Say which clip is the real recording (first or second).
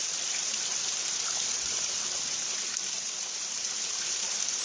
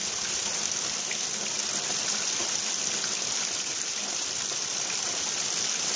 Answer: second